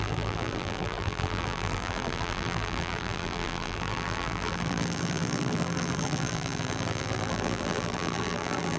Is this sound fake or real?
fake